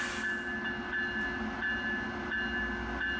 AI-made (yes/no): no